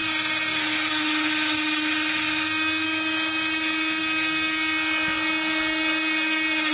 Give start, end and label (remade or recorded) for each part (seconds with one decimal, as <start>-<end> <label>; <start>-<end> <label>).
0.0-6.7 recorded